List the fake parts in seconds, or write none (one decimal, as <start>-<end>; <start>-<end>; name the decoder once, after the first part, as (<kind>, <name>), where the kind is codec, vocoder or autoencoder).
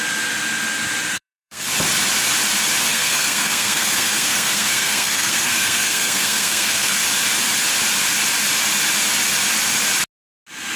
1.1-1.7 (codec, SNAC); 2.9-7.0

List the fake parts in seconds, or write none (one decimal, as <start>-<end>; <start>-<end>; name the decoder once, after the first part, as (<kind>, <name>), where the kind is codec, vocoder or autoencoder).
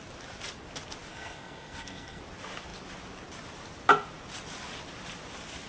1.1-2.2 (codec, SNAC)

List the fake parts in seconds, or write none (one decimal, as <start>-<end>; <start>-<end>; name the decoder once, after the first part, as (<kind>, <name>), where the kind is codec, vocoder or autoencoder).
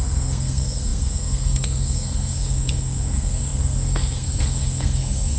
0.0-5.4 (codec, SNAC)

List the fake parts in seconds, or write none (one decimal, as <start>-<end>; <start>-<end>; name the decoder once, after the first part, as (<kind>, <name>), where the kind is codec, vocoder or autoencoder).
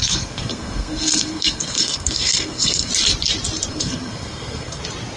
0.0-2.9 (codec, SNAC); 3.7-4.8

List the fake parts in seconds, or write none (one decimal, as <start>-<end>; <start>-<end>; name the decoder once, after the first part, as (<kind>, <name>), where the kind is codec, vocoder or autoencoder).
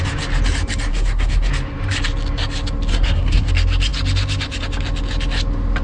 0.9-1.5 (codec, SNAC); 2.9-3.5